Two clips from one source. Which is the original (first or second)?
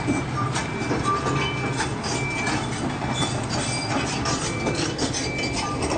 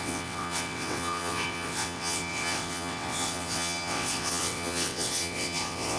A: first